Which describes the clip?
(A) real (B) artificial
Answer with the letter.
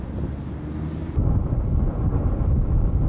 A